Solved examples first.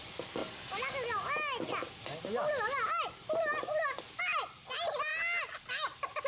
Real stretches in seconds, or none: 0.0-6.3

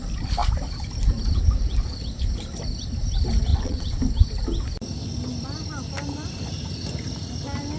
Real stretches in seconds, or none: 0.0-3.5; 4.0-7.8

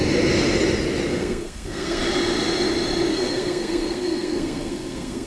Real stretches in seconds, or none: 0.0-1.1; 2.0-3.1

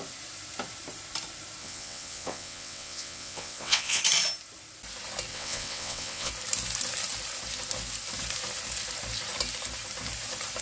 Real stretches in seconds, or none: 0.0-1.6; 4.0-5.3; 6.3-10.6

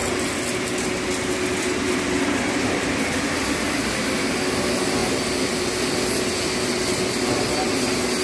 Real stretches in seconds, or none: 0.0-8.2

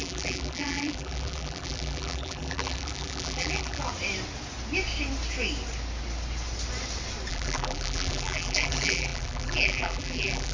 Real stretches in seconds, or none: 3.9-7.3

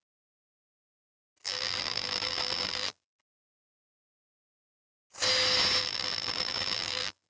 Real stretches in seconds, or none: 0.0-1.4; 3.9-5.8

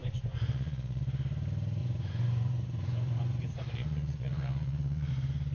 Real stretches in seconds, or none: 1.0-1.8; 5.1-5.5